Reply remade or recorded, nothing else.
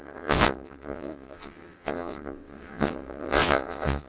remade